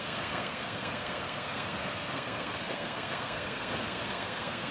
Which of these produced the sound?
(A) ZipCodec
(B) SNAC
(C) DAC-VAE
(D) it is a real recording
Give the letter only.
B